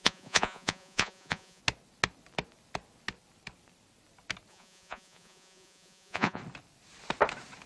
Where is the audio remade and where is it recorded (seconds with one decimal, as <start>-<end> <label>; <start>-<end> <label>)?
0.0-1.6 remade; 1.6-4.5 recorded; 4.5-6.4 remade; 6.4-7.7 recorded